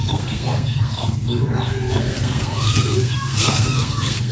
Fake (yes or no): yes